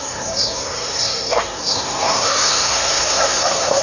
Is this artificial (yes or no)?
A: yes